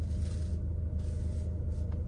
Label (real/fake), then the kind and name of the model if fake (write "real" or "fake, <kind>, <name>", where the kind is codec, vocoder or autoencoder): real